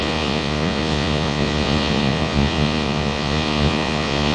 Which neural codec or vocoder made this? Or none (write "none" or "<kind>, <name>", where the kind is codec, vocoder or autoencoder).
vocoder, Vocos